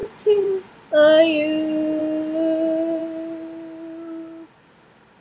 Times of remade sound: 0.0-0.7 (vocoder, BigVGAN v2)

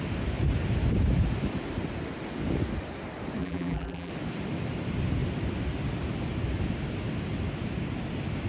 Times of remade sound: 3.4-4.1 (vocoder, BigVGAN v2)